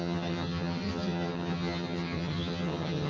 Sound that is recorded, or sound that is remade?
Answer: remade